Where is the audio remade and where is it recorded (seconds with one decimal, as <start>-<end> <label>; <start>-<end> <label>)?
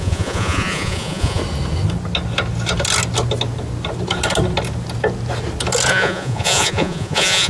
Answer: 0.0-1.4 remade; 1.4-5.9 recorded; 5.9-7.5 remade